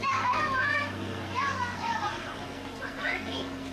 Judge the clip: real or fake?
fake